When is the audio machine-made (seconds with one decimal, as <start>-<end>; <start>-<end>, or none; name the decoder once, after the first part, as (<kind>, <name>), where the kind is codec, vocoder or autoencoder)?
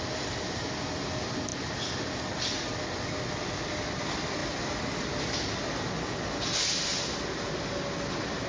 none